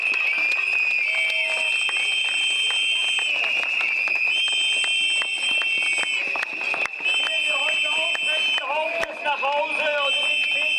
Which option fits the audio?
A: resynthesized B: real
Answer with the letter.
B